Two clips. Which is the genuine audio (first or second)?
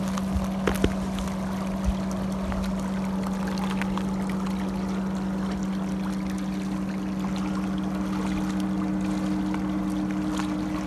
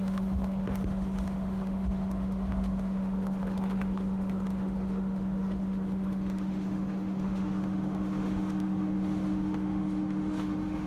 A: first